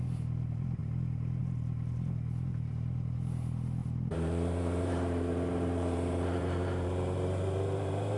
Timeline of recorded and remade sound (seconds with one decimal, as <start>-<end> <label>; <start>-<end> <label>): 0.0-0.8 remade; 0.8-1.4 recorded; 1.4-8.2 remade